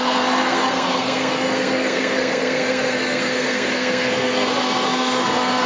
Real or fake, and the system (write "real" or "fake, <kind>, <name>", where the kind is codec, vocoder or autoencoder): fake, codec, SNAC